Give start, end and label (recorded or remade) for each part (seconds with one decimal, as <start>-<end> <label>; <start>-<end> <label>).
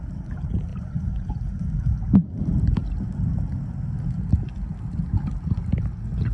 0.0-0.7 recorded; 0.7-1.7 remade; 1.7-6.3 recorded